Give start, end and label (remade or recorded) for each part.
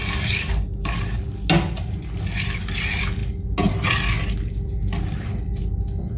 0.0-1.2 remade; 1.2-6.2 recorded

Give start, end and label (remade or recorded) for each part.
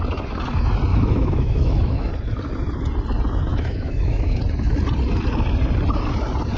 0.0-0.9 recorded; 0.9-2.1 remade; 2.1-3.5 recorded; 3.5-4.4 remade; 4.4-6.6 recorded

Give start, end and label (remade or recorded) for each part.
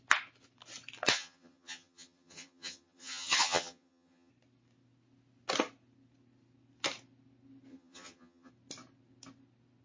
0.0-1.1 recorded; 1.1-4.3 remade; 4.3-7.7 recorded; 7.7-8.5 remade; 8.5-9.8 recorded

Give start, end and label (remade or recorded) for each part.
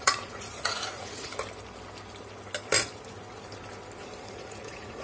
0.0-1.3 remade; 1.3-4.3 recorded; 4.3-5.0 remade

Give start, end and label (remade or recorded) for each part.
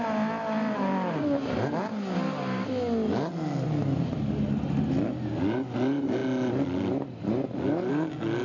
0.0-8.4 recorded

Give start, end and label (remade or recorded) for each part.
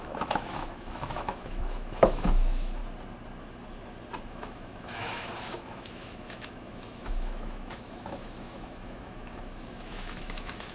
0.0-2.8 remade; 2.8-4.2 recorded; 4.2-10.7 remade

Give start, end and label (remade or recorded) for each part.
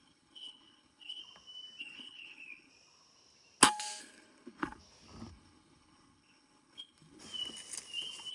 0.0-1.2 remade; 1.2-1.8 recorded; 1.8-2.7 remade; 2.7-4.0 recorded; 4.0-4.8 remade; 4.8-5.3 recorded; 5.3-7.2 remade; 7.2-8.3 recorded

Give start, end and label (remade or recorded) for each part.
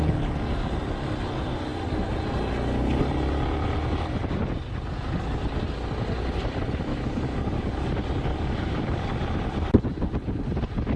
0.0-6.9 recorded; 6.9-7.9 remade; 7.9-8.3 recorded; 8.3-9.2 remade; 9.2-11.0 recorded